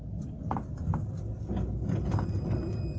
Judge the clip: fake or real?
real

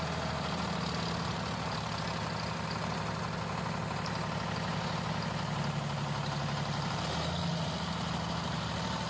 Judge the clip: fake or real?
real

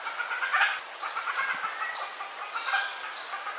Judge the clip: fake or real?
real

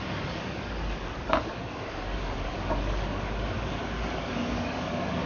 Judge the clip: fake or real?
fake